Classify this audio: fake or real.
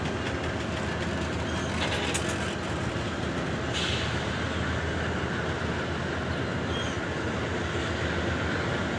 real